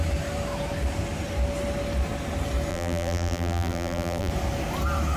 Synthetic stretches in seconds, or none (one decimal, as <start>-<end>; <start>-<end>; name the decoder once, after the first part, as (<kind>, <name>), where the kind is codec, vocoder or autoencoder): 2.7-4.3 (vocoder, BigVGAN v2)